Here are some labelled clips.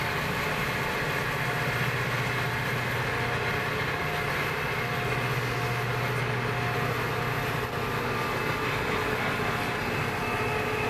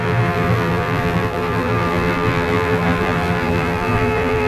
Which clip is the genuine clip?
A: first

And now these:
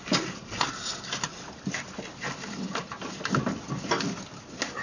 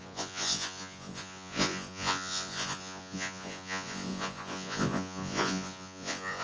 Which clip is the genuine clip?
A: first